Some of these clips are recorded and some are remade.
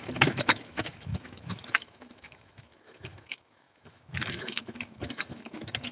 remade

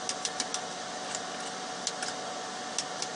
recorded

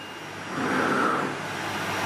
recorded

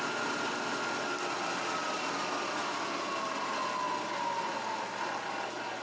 recorded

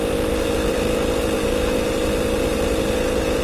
remade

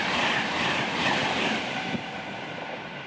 recorded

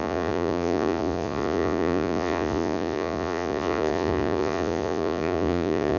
remade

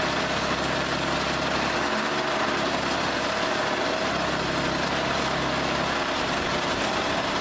recorded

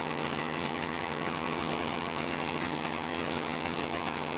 remade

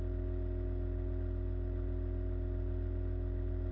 recorded